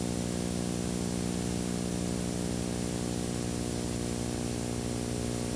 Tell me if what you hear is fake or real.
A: real